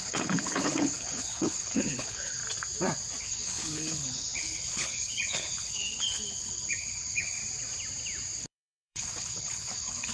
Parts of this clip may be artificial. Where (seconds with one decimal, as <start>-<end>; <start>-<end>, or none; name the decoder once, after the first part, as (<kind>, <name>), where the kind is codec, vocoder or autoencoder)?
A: 0.0-2.4 (codec, HILCodec); 3.2-7.4; 8.4-10.1